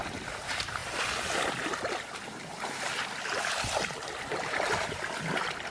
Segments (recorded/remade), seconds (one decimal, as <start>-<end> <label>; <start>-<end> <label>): 0.0-5.7 recorded